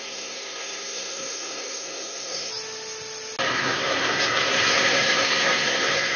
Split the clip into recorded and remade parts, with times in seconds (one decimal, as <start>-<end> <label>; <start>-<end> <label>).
0.0-2.5 remade; 2.5-3.5 recorded; 3.5-6.2 remade